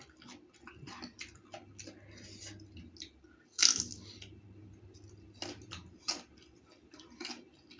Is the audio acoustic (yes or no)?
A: yes